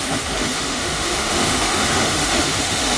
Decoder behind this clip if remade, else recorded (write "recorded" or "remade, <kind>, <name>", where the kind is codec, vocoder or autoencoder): remade, autoencoder, DAC-VAE